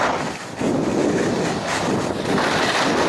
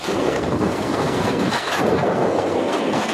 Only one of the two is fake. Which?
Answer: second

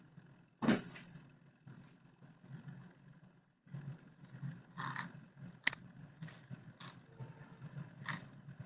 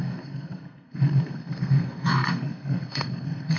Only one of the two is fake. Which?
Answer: second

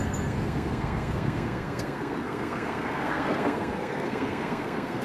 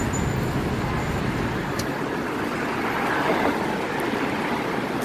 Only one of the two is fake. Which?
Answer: first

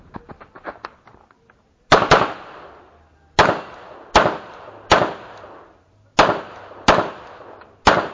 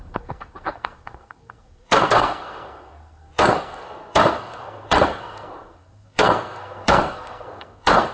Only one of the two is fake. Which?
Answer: second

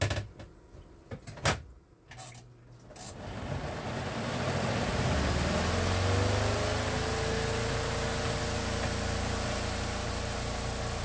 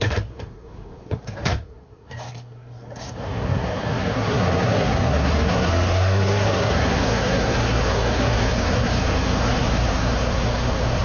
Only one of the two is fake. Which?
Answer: second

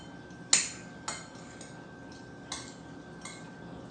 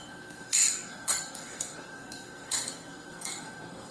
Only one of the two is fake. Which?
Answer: second